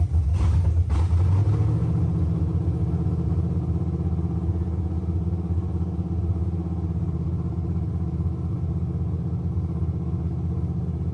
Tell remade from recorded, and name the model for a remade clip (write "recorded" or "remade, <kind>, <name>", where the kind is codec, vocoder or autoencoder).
recorded